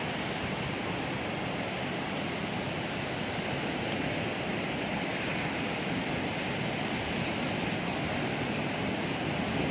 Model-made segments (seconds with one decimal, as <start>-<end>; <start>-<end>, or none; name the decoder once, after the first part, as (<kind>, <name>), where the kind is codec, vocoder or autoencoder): none